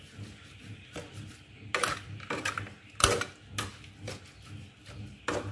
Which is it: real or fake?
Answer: real